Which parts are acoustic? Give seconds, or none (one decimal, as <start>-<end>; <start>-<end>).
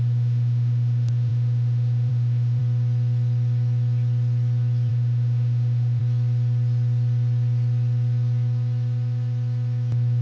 2.6-4.9; 6.0-10.2